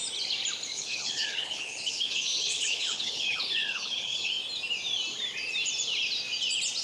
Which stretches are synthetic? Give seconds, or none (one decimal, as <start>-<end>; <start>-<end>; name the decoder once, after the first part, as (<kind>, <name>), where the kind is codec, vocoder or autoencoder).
0.7-4.3 (codec, HILCodec)